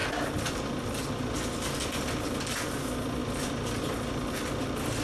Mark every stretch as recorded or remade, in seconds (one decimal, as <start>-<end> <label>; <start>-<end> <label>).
0.0-5.0 recorded

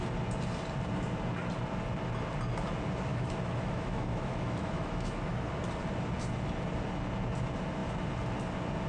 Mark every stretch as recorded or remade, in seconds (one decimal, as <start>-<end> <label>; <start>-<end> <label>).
0.0-3.1 recorded; 3.1-5.5 remade; 5.5-8.9 recorded

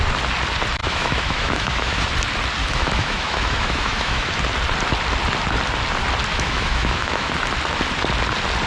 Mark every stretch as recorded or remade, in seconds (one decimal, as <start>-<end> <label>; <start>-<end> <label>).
0.0-0.8 recorded; 0.8-2.0 remade; 2.0-2.6 recorded; 2.6-4.4 remade; 4.4-6.3 recorded; 6.3-7.3 remade; 7.3-8.7 recorded

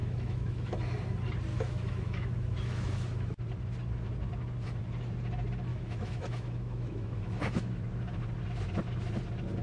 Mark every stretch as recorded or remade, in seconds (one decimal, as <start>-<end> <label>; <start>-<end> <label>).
0.0-0.8 remade; 0.8-1.5 recorded; 1.5-3.4 remade; 3.4-5.7 recorded; 5.7-7.8 remade; 7.8-9.6 recorded

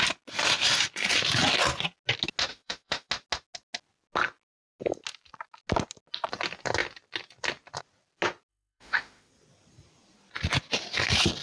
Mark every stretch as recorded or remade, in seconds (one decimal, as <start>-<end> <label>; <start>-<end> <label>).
0.0-2.5 recorded; 2.5-3.1 remade; 3.1-8.5 recorded; 8.5-9.3 remade; 9.3-11.4 recorded

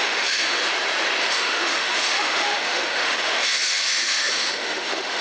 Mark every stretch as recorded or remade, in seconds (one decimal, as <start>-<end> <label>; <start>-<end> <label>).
0.0-0.6 remade; 0.6-1.2 recorded; 1.2-5.2 remade